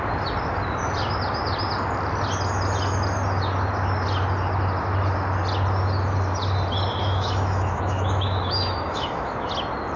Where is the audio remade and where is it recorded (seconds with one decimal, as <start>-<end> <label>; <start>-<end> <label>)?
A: 0.0-7.0 recorded; 7.0-9.5 remade; 9.5-10.0 recorded